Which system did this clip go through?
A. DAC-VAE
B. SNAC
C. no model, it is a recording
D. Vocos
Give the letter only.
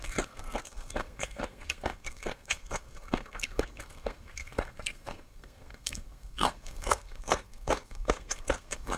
B